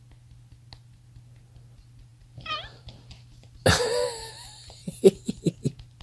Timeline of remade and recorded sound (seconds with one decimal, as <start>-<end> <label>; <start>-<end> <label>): 0.0-6.0 recorded